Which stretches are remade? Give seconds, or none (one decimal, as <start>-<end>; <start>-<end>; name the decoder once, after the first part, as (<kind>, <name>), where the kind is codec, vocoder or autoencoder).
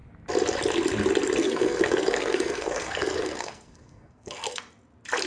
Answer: 1.4-4.6 (codec, SNAC)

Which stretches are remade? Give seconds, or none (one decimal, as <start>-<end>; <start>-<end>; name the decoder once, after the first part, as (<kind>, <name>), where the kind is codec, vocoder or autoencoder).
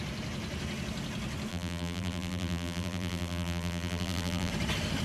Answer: 1.5-4.5 (vocoder, BigVGAN v2)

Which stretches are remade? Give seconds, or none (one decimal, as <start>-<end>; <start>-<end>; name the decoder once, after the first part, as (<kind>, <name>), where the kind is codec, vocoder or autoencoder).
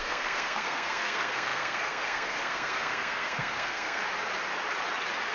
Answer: 0.0-4.0 (codec, SNAC)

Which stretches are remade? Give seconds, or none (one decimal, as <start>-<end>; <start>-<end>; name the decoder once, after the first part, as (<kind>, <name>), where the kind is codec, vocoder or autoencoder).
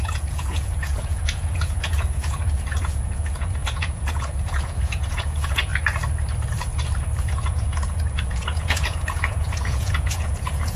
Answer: 0.0-5.7 (vocoder, Vocos); 7.2-10.8